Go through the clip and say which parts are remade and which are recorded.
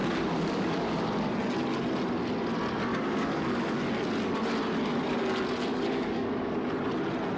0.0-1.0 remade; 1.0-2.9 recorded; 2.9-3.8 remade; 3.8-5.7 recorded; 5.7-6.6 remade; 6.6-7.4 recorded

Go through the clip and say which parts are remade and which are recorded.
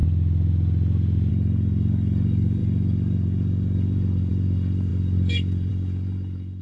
0.0-1.3 recorded; 1.3-6.6 remade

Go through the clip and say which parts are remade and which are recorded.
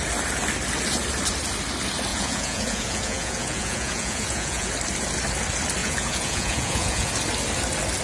0.0-2.1 recorded; 2.1-4.7 remade; 4.7-5.8 recorded; 5.8-7.1 remade; 7.1-8.0 recorded